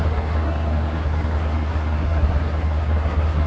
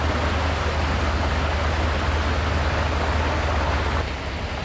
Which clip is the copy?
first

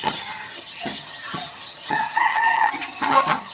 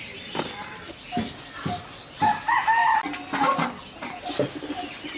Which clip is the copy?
first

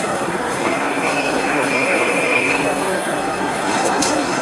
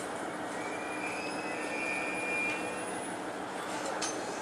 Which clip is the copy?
first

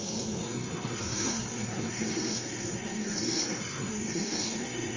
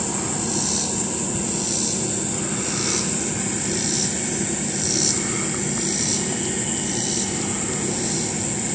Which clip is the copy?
first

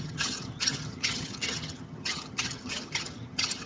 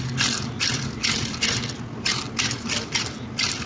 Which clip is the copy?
first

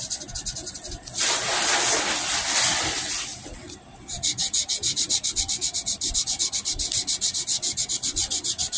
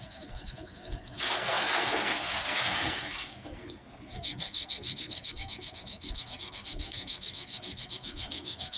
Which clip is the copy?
second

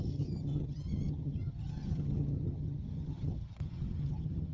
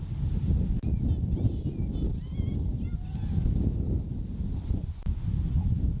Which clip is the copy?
first